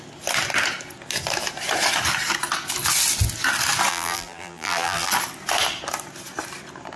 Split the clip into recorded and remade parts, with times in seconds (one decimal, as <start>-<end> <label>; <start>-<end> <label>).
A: 0.0-3.9 recorded; 3.9-5.1 remade; 5.1-7.0 recorded